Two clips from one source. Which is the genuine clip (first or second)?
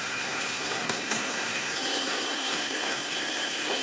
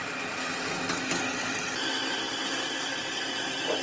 second